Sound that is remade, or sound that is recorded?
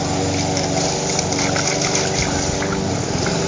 recorded